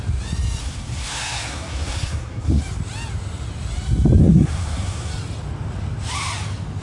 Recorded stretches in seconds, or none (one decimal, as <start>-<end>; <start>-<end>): 0.0-0.6; 2.6-4.2; 5.1-6.8